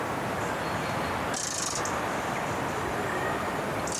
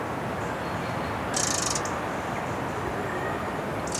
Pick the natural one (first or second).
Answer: second